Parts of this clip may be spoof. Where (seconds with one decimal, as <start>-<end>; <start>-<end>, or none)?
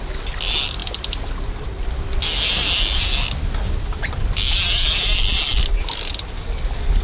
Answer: none